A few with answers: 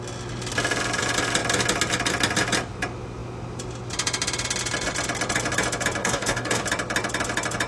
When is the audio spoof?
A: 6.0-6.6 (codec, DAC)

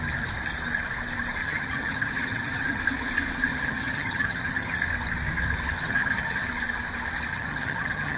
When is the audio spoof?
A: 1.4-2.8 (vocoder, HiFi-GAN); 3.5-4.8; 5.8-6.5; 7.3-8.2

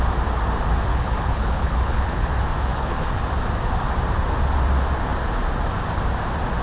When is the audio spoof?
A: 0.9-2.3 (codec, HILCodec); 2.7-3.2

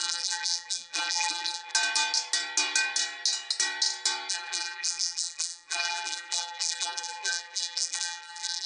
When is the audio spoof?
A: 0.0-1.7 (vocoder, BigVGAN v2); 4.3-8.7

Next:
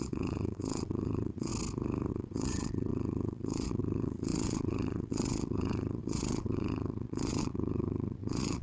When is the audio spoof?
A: 0.0-1.5 (vocoder, WaveNeXt); 2.1-8.6

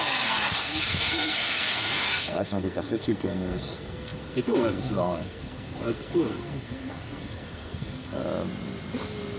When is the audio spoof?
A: 0.0-8.2 (codec, SNAC)